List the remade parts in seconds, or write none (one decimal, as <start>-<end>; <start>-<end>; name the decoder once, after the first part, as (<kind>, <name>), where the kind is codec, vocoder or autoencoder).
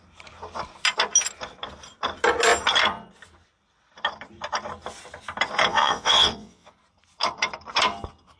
5.7-6.7 (vocoder, WaveNeXt)